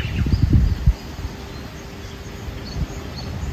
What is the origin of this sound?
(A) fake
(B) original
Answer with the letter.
B